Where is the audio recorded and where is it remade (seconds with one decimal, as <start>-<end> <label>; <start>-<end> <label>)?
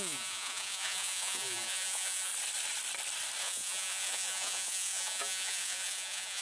0.0-2.3 remade; 2.3-3.4 recorded; 3.4-6.4 remade